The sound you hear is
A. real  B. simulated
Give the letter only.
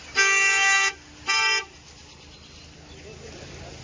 A